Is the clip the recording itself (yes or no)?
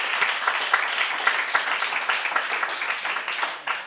yes